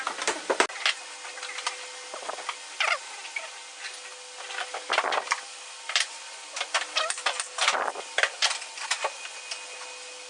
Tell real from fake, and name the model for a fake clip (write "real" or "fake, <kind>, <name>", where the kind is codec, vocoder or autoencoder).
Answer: real